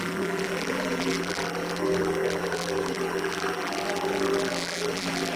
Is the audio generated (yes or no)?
yes